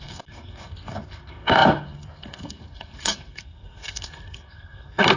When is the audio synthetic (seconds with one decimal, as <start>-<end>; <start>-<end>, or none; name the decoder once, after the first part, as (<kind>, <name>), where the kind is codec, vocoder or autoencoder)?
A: 0.0-5.2 (codec, SNAC)